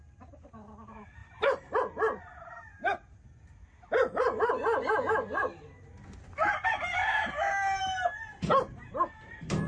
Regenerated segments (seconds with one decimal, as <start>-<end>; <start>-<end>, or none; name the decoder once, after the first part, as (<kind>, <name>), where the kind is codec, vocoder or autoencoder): none